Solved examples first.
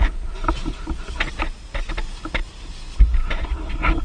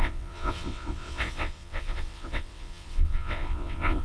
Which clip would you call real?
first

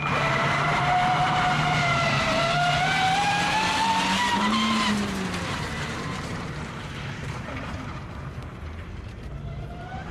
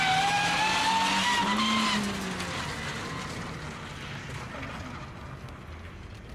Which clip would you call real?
second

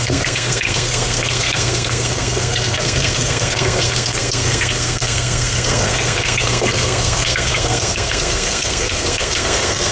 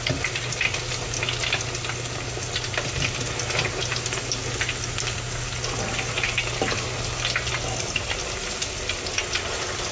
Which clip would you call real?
second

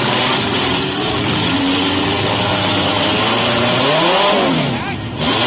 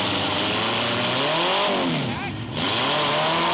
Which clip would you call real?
second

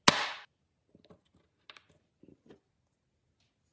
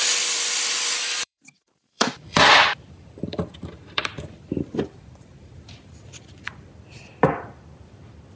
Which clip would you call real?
first